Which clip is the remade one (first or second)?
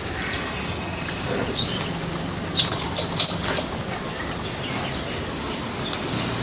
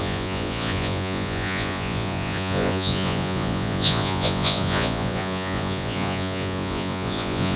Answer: second